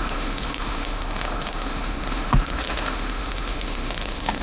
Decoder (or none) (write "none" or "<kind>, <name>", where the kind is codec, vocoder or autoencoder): autoencoder, DAC-VAE